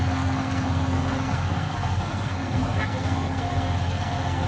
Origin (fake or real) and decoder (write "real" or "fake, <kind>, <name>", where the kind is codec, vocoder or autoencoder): fake, codec, SNAC